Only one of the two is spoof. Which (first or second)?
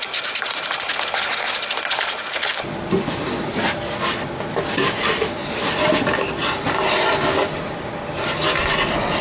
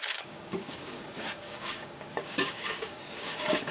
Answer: second